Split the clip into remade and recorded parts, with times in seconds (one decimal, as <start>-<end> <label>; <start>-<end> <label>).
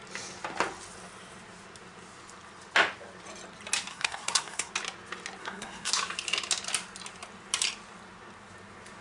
0.0-3.9 recorded; 3.9-4.7 remade; 4.7-5.4 recorded; 5.4-5.9 remade; 5.9-9.0 recorded